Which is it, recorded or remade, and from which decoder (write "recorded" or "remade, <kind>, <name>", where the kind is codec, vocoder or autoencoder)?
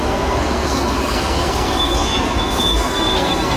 remade, codec, SNAC